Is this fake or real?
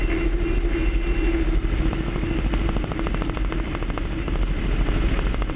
real